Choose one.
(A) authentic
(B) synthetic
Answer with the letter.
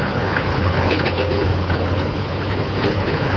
B